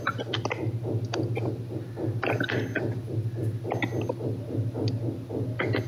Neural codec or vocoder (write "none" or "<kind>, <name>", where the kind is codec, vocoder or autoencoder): none